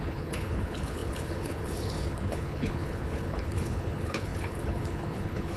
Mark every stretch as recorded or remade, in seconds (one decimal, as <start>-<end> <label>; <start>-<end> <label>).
0.0-5.6 remade